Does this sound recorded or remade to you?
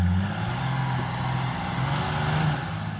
recorded